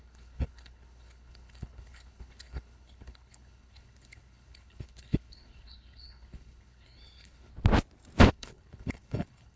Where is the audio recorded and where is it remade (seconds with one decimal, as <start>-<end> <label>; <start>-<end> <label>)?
0.0-7.5 remade; 7.5-8.3 recorded; 8.3-9.6 remade